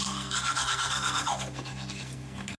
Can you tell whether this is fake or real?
fake